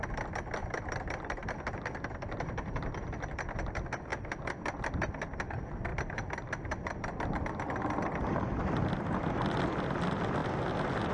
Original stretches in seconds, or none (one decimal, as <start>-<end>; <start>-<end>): 0.0-0.6; 3.6-5.9; 9.0-11.1